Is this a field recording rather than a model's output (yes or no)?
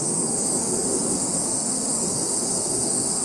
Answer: no